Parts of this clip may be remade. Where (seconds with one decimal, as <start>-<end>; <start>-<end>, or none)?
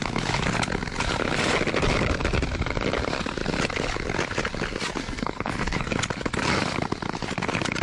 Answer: 5.0-5.9